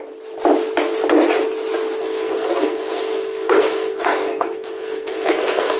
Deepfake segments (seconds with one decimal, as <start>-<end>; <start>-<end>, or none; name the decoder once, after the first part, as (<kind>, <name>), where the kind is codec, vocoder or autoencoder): 2.0-5.8 (codec, SNAC)